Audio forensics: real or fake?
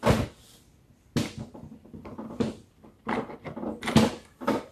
real